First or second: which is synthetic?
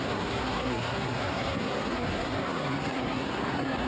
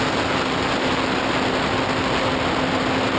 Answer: first